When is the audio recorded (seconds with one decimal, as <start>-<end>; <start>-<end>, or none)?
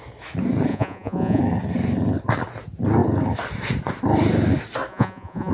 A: 0.0-0.7; 1.4-4.9